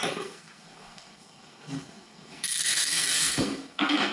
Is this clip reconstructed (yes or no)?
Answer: yes